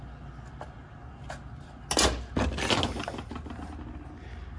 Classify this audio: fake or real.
real